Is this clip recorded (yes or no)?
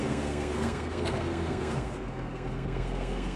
no